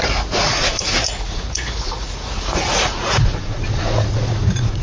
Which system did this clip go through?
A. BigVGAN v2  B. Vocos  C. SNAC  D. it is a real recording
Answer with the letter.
B